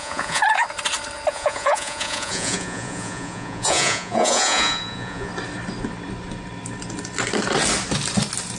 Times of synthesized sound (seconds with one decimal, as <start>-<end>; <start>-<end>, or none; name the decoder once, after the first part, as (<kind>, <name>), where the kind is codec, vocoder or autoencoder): 0.0-0.4 (vocoder, Vocos); 1.3-5.3